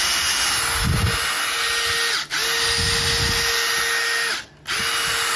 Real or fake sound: real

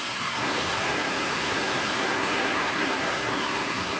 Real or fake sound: fake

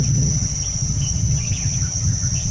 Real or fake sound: fake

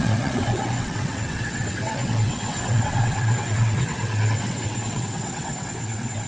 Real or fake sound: fake